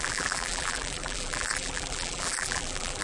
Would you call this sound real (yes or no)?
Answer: no